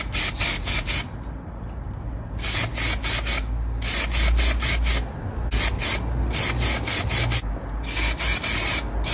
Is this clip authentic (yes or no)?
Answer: yes